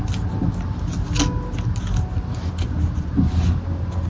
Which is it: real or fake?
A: real